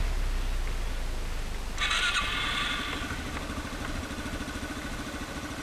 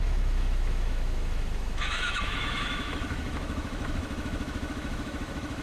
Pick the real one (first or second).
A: first